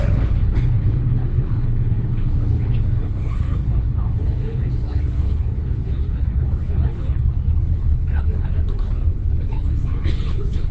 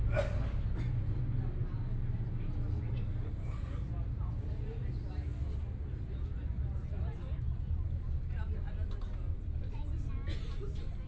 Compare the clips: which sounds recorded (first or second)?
second